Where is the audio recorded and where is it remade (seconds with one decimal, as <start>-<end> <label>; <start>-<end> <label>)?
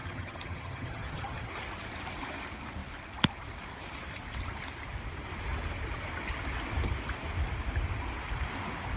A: 0.0-1.5 remade; 1.5-9.0 recorded